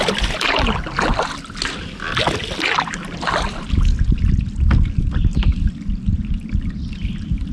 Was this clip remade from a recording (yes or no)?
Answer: no